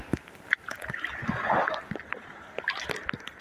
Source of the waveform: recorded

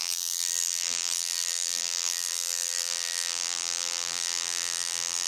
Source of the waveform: remade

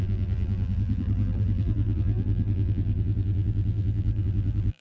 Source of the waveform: remade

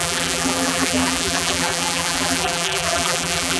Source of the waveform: remade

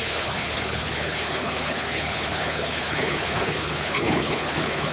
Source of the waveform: remade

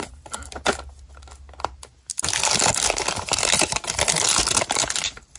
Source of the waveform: recorded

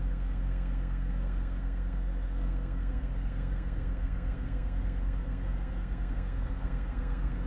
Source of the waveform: remade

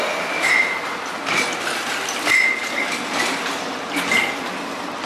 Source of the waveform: recorded